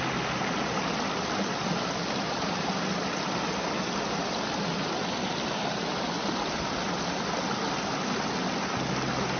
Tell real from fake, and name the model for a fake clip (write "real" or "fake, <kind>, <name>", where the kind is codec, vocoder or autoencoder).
real